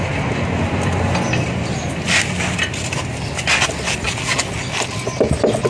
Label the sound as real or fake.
real